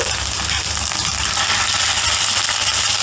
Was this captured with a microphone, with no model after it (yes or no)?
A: yes